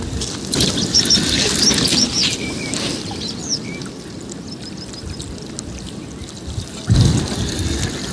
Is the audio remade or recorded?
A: recorded